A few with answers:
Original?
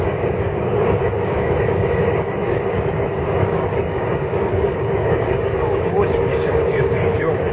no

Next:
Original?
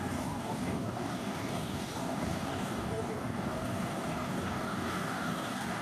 no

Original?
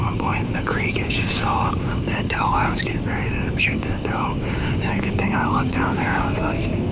no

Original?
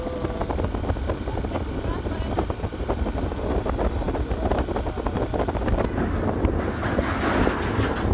yes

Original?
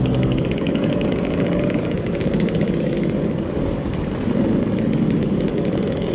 no